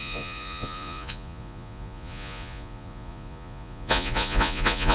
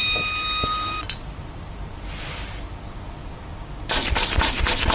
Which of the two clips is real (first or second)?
second